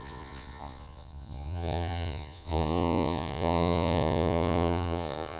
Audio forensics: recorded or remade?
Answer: remade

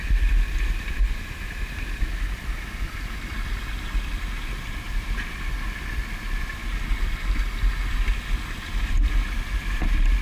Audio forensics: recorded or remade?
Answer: recorded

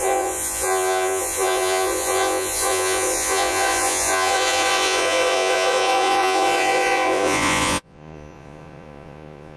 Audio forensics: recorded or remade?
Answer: remade